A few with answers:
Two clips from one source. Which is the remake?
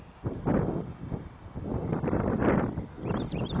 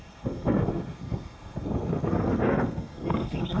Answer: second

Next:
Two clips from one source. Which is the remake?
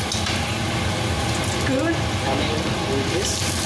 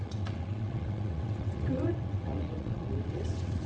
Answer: second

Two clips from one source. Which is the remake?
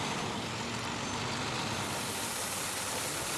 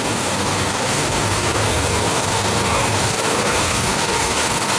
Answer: second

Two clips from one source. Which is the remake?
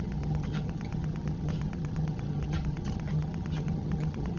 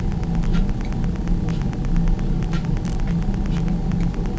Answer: first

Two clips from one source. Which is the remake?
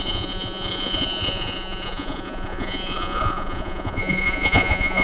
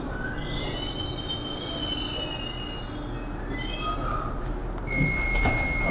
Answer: first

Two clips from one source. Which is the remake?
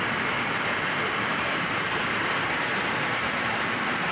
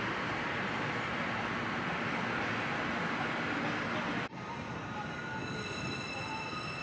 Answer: first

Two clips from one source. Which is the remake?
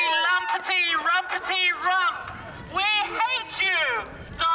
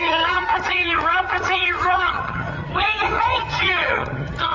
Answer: second